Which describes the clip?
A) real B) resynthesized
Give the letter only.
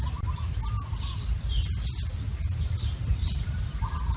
A